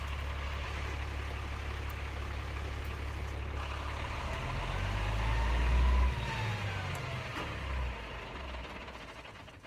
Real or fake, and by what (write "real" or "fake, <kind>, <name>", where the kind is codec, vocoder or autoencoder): real